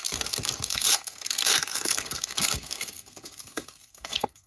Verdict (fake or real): fake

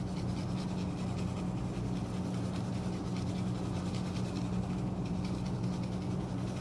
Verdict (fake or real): real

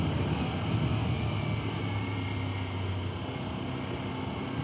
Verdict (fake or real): real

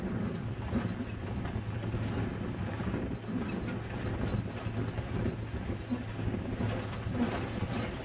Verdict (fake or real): real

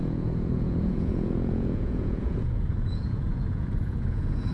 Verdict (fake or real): fake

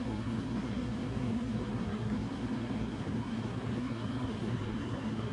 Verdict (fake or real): fake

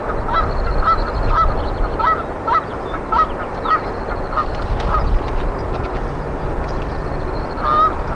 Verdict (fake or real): real